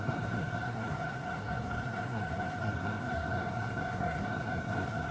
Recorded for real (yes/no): no